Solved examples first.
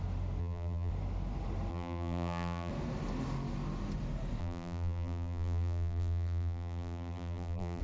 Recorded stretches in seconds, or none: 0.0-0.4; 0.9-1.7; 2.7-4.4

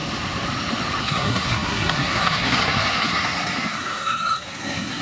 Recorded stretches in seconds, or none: 0.0-1.0

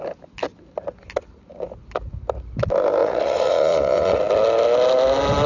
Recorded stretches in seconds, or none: 0.0-3.0; 4.2-5.5